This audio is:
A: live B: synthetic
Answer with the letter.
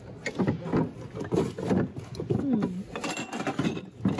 A